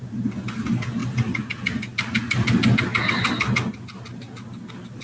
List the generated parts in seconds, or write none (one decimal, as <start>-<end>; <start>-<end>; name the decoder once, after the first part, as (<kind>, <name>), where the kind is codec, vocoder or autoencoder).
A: none